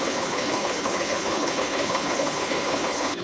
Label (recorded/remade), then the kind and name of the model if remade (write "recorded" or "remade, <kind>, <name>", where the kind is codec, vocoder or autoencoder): remade, codec, HILCodec